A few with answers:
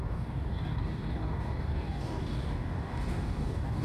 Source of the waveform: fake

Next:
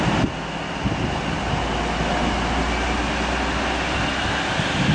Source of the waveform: real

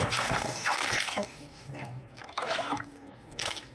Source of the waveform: fake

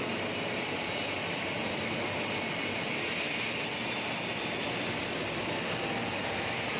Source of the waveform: fake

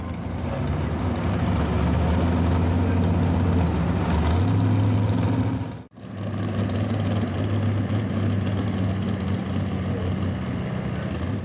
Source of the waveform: real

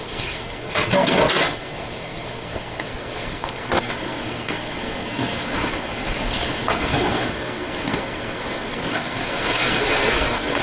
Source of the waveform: fake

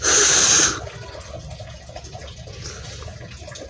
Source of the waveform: real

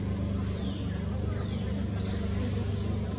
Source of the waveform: real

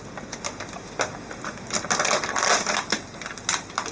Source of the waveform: real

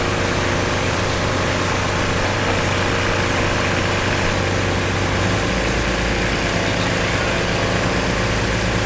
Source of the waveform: real